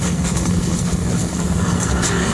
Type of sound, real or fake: fake